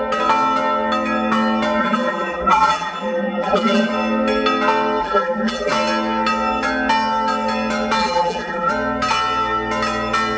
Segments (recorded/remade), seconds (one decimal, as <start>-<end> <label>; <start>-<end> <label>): 0.0-1.8 recorded; 1.8-3.9 remade; 3.9-5.0 recorded; 5.0-5.7 remade; 5.7-8.0 recorded; 8.0-8.7 remade; 8.7-10.4 recorded